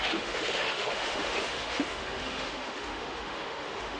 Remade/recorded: remade